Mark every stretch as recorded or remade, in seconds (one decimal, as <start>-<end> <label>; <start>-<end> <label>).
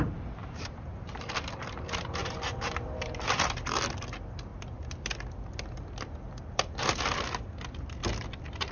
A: 0.0-0.4 recorded; 0.4-1.2 remade; 1.2-2.2 recorded; 2.2-3.8 remade; 3.8-8.7 recorded